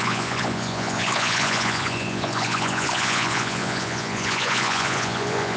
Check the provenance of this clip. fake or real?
fake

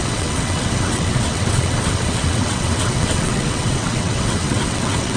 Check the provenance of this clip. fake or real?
fake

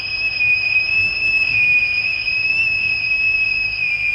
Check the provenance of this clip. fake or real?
fake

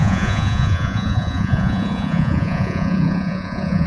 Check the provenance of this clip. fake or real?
fake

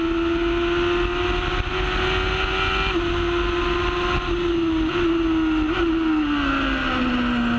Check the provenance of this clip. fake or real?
real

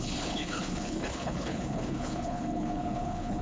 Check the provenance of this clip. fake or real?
fake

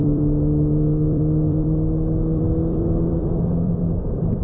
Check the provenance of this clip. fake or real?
fake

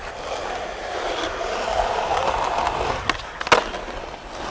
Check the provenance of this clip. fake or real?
real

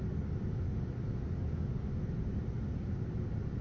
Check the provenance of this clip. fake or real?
real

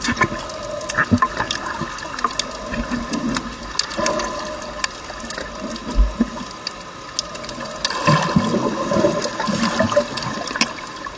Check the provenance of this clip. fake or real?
real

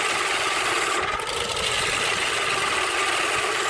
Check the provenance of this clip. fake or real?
real